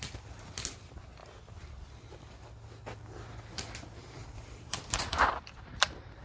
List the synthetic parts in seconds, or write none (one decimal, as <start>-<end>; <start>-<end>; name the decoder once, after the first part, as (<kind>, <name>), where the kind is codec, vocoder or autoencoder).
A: 4.2-6.2 (vocoder, BigVGAN v2)